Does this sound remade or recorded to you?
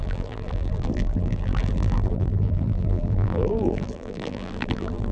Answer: remade